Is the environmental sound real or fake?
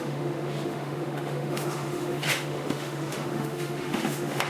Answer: fake